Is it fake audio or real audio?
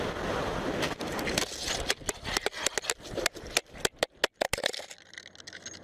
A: real